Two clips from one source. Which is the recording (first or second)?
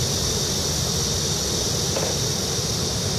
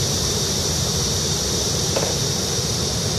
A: first